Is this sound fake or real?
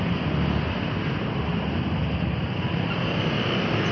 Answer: real